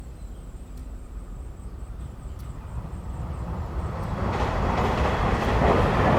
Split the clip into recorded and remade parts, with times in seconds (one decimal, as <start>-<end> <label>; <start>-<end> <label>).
0.0-0.8 recorded; 0.8-2.0 remade; 2.0-4.2 recorded; 4.2-5.3 remade; 5.3-6.2 recorded